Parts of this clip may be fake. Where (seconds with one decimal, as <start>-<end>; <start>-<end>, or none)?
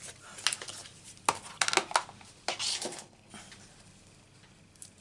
2.7-3.3